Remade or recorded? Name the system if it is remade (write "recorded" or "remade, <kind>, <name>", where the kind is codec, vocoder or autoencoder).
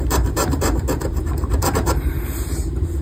remade, vocoder, BigVGAN v2